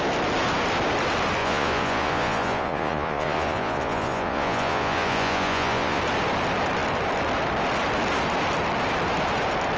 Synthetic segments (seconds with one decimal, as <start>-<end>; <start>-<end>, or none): 1.4-6.0